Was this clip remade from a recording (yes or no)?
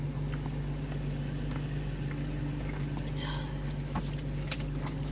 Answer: no